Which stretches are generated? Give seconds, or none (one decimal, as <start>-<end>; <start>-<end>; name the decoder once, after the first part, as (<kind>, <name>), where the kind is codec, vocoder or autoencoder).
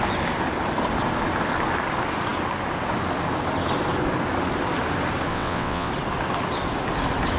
5.3-5.9 (vocoder, WaveNeXt)